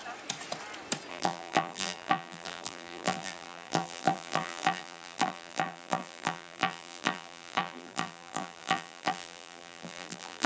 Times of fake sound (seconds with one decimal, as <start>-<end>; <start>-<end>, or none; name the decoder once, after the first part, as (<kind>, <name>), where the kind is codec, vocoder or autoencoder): 1.1-10.5 (vocoder, BigVGAN v2)